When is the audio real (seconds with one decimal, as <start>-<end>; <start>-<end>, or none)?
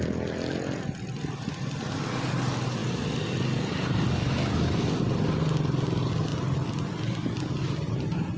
0.0-8.4